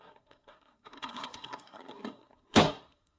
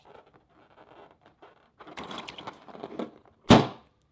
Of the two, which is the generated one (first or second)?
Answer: first